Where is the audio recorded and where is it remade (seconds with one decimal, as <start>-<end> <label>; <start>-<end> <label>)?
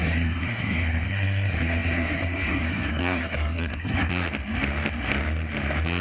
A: 0.0-4.1 remade; 4.1-6.0 recorded